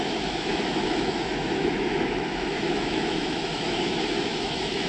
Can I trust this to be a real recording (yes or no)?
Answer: no